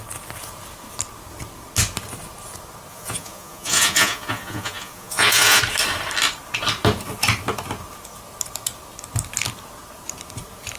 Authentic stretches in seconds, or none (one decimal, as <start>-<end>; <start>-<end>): 0.0-2.9; 5.6-10.8